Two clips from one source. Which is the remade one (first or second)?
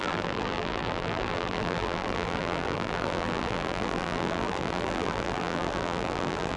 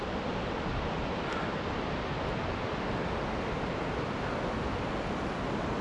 first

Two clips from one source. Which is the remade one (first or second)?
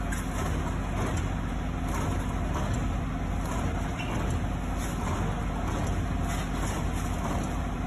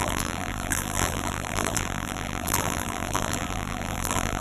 second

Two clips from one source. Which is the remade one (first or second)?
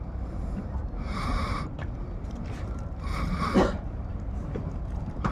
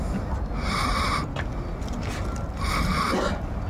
first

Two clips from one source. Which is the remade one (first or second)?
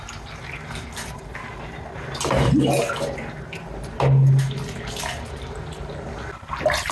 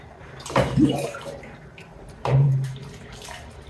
second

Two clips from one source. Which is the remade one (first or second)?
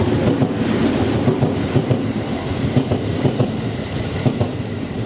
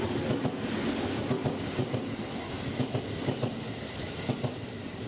first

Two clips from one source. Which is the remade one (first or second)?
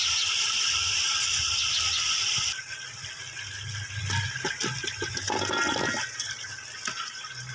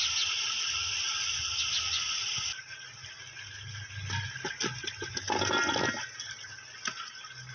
first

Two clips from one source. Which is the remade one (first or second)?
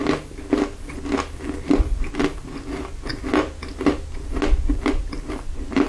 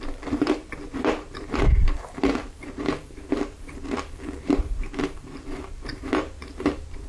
second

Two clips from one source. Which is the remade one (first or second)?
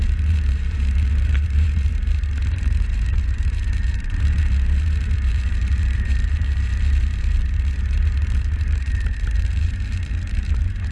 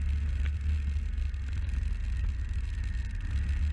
first